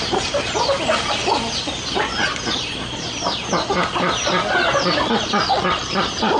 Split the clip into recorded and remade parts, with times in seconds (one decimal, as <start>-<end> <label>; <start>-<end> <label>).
0.0-6.4 recorded